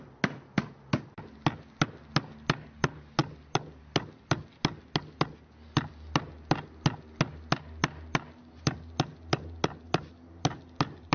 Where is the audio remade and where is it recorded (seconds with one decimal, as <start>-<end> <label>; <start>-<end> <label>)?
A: 0.0-11.1 recorded